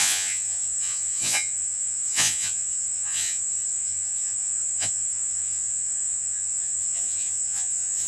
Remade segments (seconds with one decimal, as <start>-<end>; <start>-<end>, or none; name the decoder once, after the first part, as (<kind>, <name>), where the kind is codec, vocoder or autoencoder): 0.0-8.1 (vocoder, Vocos)